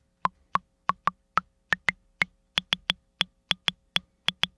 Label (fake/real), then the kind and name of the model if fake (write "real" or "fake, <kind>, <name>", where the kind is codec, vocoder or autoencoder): real